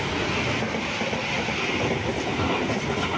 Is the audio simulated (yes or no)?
no